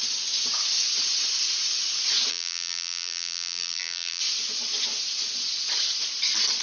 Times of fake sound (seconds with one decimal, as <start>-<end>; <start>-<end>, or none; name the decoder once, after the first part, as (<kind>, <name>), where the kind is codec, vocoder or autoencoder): 2.3-4.2 (vocoder, BigVGAN v2)